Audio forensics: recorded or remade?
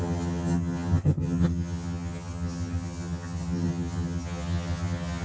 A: remade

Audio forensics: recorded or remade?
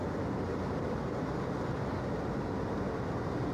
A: recorded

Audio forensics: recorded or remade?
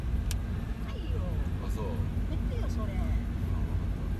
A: recorded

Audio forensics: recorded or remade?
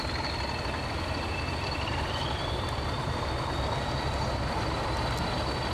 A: recorded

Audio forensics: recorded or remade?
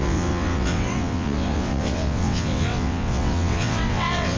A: remade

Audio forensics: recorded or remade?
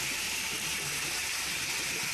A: recorded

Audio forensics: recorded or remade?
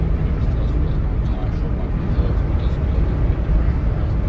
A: recorded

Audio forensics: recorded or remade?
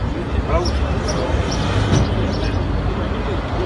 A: recorded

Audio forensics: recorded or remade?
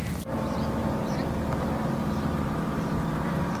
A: remade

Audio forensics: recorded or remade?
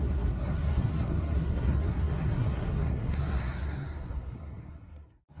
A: remade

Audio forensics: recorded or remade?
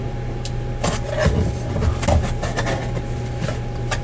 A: recorded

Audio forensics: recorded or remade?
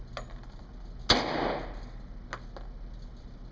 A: recorded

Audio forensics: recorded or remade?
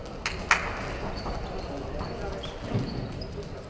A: recorded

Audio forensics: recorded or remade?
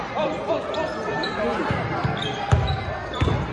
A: recorded